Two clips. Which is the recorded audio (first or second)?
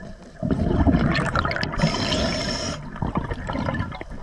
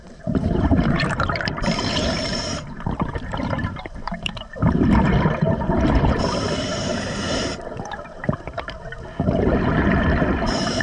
first